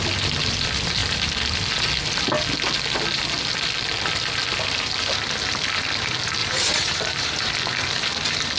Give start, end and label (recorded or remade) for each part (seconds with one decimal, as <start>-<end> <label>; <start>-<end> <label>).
0.0-6.4 recorded; 6.4-7.5 remade; 7.5-8.6 recorded